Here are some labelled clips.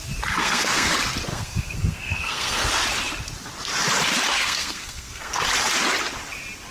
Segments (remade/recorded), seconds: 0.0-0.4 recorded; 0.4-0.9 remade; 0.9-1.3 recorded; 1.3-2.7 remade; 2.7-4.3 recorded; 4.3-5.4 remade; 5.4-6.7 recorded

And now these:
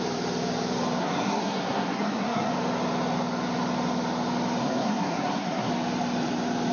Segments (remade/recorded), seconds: 0.0-1.0 recorded; 1.0-2.5 remade; 2.5-4.6 recorded; 4.6-5.7 remade; 5.7-6.7 recorded

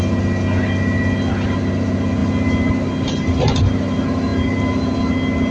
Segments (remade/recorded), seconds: 0.0-5.5 recorded

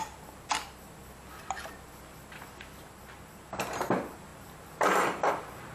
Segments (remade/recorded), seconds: 0.0-5.7 recorded

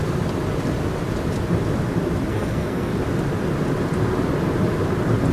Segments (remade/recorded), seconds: 0.0-2.3 recorded; 2.3-2.9 remade; 2.9-5.3 recorded